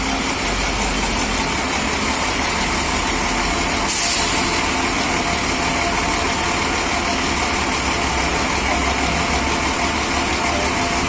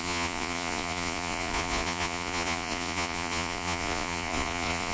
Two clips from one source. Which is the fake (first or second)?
second